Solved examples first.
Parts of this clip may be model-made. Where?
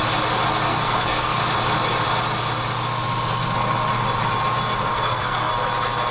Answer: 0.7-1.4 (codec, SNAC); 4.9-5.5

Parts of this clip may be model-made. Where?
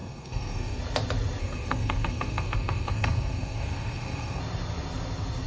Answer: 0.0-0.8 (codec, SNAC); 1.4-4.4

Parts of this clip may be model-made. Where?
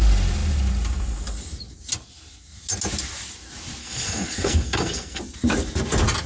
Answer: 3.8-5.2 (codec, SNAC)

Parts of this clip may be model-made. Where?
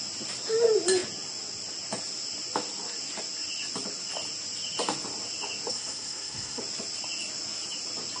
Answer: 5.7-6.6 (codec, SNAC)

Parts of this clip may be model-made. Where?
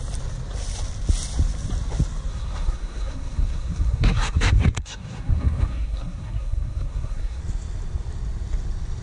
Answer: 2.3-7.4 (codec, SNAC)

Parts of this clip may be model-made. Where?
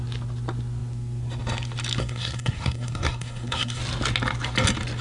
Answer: 2.0-3.8 (codec, SNAC)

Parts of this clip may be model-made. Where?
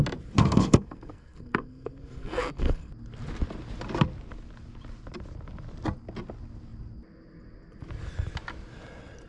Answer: 0.4-2.9 (codec, SNAC)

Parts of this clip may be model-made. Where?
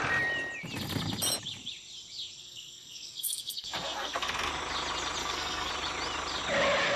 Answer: 2.4-4.5 (codec, SNAC); 5.2-5.7